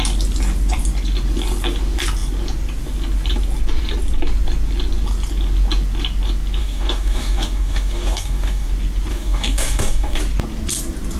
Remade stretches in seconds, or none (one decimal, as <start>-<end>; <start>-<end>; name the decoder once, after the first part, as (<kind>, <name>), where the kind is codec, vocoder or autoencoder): 6.6-8.7 (codec, DAC); 9.1-10.2